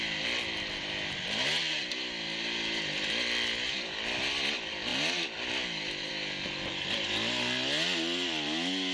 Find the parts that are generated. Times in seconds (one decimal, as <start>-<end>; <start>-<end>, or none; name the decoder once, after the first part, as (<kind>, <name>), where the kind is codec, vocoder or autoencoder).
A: none